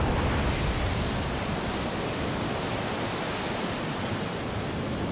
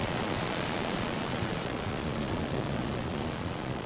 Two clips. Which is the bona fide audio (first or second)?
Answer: first